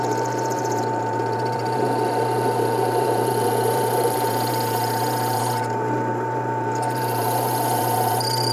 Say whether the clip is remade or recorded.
remade